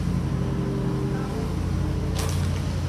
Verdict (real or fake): real